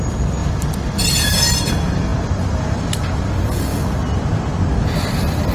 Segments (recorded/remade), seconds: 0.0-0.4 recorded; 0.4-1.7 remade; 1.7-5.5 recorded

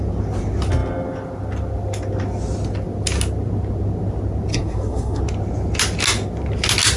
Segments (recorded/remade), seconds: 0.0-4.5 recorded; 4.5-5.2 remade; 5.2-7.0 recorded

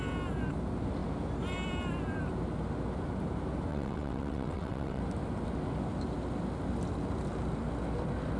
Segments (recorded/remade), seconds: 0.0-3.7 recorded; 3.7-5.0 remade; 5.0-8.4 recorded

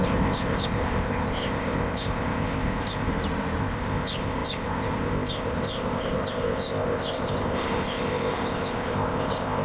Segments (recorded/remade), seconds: 0.0-3.1 remade; 3.1-3.6 recorded; 3.6-9.6 remade